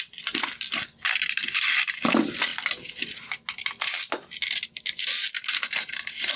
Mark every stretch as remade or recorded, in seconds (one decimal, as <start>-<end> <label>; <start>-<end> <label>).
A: 0.0-6.4 recorded